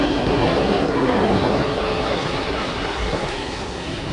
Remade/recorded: remade